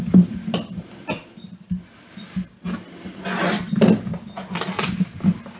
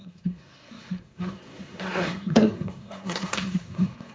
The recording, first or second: first